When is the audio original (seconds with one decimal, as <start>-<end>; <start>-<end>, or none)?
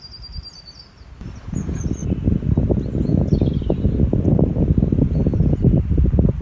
0.0-6.4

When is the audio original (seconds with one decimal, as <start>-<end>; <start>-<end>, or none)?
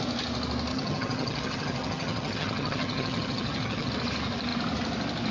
0.0-0.7; 3.9-5.3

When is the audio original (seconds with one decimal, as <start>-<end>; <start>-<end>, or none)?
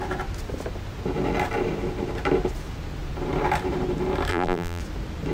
0.0-4.3; 4.8-5.3